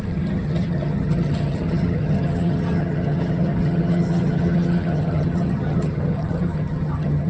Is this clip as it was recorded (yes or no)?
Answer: no